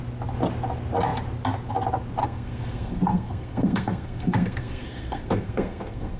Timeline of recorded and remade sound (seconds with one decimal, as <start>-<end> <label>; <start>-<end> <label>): 0.0-2.2 recorded; 2.2-6.2 remade